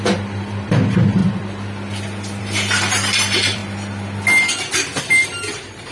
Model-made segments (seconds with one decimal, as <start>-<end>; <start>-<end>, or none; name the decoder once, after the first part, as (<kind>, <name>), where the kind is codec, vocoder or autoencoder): 0.0-1.2 (vocoder, BigVGAN v2); 2.4-3.6; 5.0-5.9

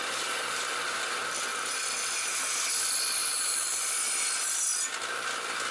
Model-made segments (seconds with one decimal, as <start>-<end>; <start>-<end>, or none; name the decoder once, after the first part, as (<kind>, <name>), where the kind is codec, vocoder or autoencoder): 0.0-0.7 (vocoder, BigVGAN v2); 1.5-2.1; 3.2-3.9

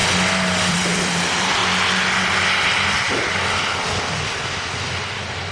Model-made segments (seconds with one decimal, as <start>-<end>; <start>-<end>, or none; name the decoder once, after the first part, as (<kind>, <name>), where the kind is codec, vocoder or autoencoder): 0.7-1.6 (vocoder, BigVGAN v2); 4.9-5.5